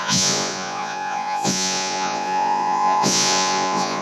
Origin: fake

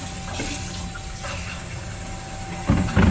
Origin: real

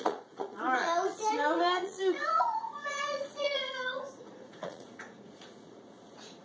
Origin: fake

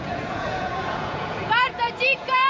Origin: fake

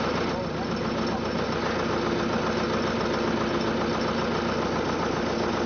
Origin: real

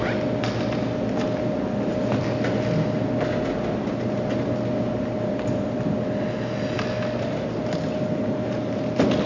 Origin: real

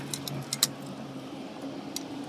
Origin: real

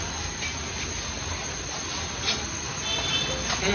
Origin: real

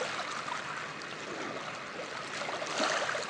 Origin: real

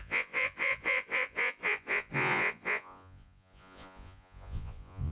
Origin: fake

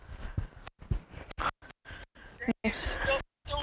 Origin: real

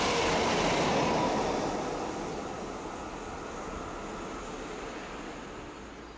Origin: real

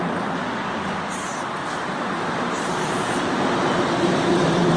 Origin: real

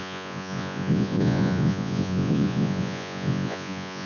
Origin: fake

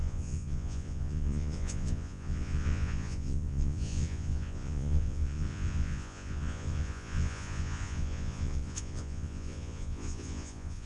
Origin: fake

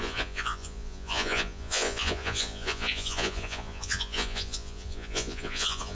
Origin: fake